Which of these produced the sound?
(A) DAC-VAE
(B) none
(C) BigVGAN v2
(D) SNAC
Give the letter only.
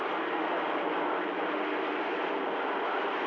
B